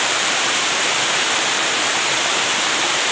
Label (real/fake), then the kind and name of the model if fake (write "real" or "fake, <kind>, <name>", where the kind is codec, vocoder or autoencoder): fake, vocoder, BigVGAN v2